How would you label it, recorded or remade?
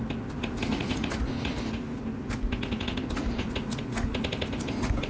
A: recorded